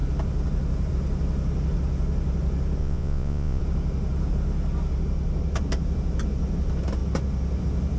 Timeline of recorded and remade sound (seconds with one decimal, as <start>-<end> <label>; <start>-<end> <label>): 0.0-2.8 recorded; 2.8-3.6 remade; 3.6-8.0 recorded